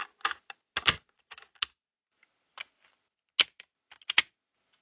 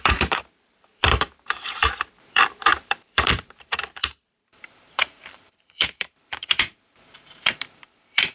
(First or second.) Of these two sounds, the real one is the first